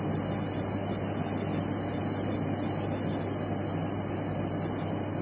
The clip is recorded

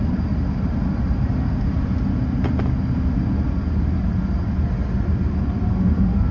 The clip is recorded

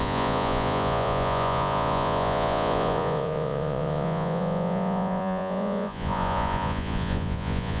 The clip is remade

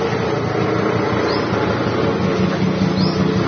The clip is recorded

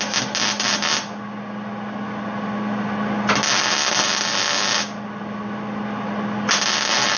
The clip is recorded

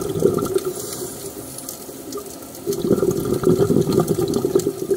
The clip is recorded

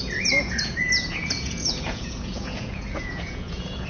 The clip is remade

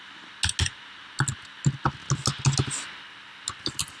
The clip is recorded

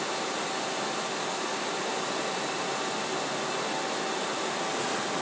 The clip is recorded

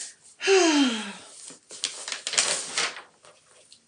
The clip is recorded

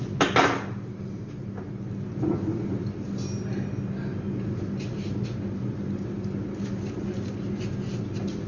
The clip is recorded